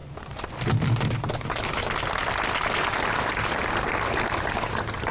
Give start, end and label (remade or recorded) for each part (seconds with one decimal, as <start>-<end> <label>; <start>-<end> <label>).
0.0-5.1 recorded